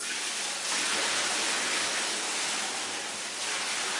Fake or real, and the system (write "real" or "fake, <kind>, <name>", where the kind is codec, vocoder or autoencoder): real